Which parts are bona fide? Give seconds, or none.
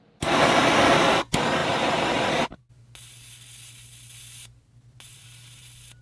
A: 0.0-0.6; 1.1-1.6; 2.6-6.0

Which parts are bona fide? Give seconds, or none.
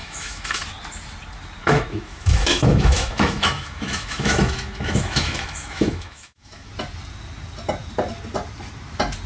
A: 0.6-1.6; 6.7-9.3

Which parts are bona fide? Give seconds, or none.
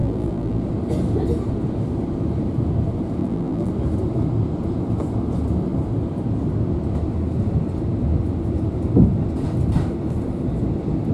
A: 0.6-3.2; 3.7-11.1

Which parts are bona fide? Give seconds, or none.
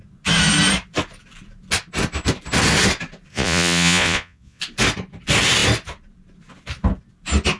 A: 0.0-3.3; 4.6-7.6